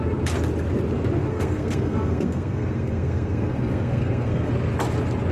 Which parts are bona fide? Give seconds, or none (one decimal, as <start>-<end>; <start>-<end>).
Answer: 0.0-1.3; 4.5-5.3